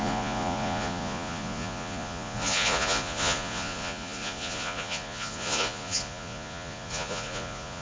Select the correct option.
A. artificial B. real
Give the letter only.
A